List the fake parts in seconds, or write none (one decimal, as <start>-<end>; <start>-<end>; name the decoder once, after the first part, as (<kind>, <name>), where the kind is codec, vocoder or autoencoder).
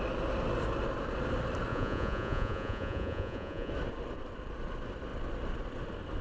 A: 1.7-3.7 (vocoder, Vocos)